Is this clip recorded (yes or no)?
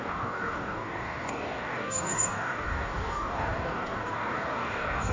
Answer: no